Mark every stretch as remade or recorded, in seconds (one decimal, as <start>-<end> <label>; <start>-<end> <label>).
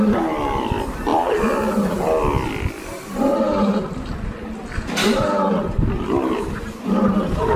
0.0-1.1 recorded; 1.1-2.0 remade; 2.0-7.6 recorded